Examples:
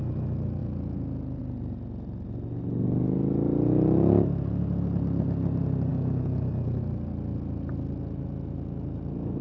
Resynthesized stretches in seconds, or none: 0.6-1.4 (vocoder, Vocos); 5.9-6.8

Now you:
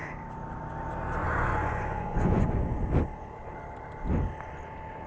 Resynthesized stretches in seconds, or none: 1.2-2.8 (vocoder, Vocos)

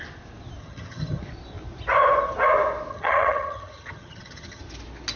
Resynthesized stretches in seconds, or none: 0.6-1.2 (vocoder, HiFi-GAN); 2.9-4.6

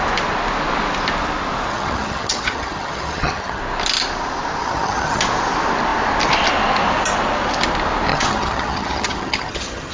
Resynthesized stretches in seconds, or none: 1.7-3.6 (vocoder, HiFi-GAN); 4.6-5.2; 8.1-9.9

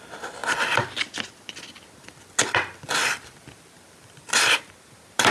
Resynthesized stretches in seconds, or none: 0.0-0.4 (vocoder, BigVGAN v2); 3.6-5.3

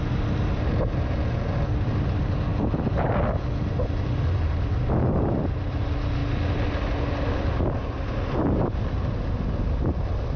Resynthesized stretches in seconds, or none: none